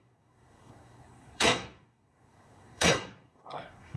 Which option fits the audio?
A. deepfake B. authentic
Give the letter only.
A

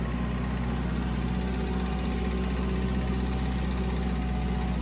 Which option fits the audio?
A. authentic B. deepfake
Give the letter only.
A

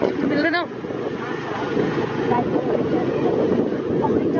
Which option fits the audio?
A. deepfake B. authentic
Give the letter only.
A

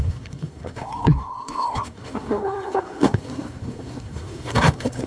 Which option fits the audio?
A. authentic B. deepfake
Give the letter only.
B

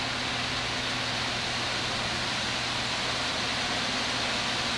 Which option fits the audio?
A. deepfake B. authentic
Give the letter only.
B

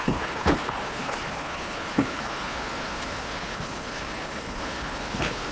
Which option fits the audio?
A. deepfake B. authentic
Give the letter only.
A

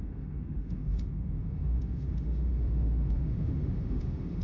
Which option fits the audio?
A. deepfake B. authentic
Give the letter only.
A